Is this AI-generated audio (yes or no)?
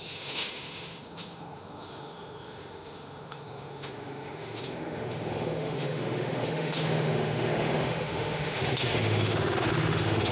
yes